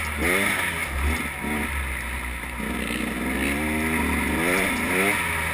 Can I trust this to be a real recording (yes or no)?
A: yes